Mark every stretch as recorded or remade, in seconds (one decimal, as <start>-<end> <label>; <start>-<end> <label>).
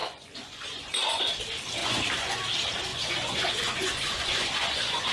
0.0-1.2 remade; 1.2-1.8 recorded; 1.8-2.4 remade; 2.4-2.9 recorded; 2.9-5.1 remade